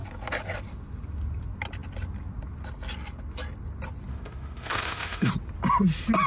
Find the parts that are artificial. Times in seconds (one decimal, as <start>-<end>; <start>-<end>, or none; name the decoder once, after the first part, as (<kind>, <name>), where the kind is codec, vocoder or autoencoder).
4.1-5.3 (autoencoder, DAC-VAE)